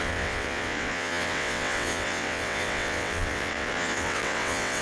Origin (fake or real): fake